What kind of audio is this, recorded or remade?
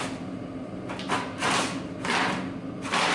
recorded